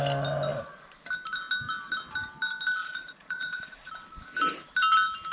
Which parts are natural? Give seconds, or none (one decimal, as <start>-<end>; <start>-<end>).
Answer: 0.0-2.8; 3.9-5.3